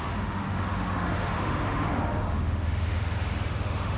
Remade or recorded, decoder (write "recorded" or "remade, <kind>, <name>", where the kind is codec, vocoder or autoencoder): remade, autoencoder, DAC-VAE